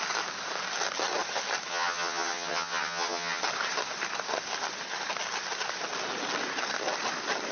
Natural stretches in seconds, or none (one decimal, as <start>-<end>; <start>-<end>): 0.0-1.7; 3.4-7.5